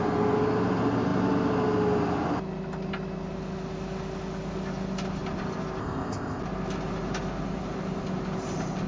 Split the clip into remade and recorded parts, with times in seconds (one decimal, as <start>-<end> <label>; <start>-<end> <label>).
0.0-5.8 recorded; 5.8-6.4 remade; 6.4-8.9 recorded